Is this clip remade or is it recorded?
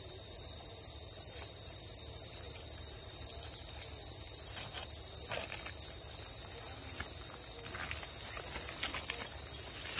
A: recorded